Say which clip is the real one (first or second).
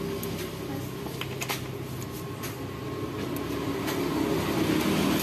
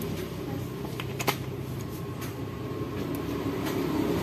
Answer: first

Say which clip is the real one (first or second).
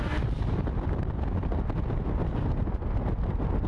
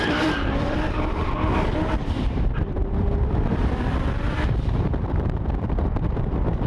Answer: first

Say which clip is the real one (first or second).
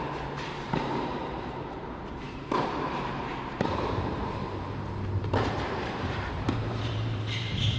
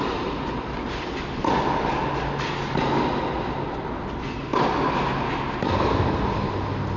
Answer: second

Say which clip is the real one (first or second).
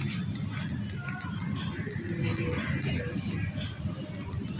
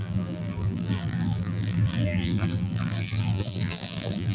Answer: first